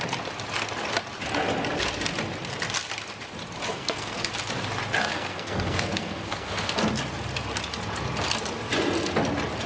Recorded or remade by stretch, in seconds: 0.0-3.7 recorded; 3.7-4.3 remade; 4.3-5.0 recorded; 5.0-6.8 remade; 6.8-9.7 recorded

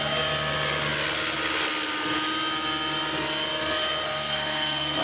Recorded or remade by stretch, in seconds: 0.0-4.1 recorded; 4.1-5.0 remade

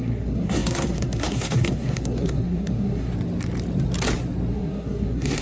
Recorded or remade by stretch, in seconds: 0.0-3.1 remade; 3.1-4.5 recorded; 4.5-5.4 remade

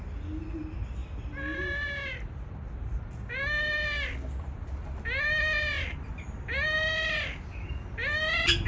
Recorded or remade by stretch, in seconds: 0.0-8.7 recorded

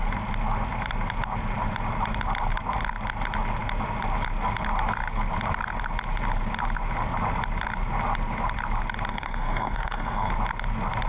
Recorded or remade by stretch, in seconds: 0.0-9.1 recorded; 9.1-10.3 remade; 10.3-11.1 recorded

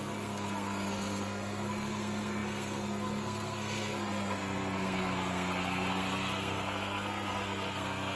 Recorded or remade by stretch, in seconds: 0.0-8.2 remade

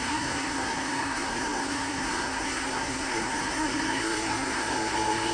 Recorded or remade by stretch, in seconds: 0.0-5.3 remade